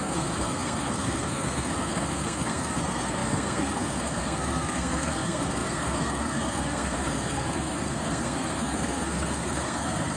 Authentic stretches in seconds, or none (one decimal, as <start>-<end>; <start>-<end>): none